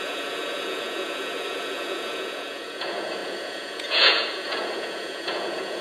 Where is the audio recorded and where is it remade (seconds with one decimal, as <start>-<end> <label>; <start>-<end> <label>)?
0.0-5.8 remade